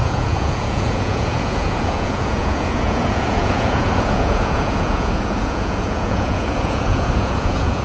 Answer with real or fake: fake